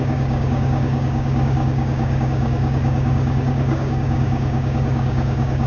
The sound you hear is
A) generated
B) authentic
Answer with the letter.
A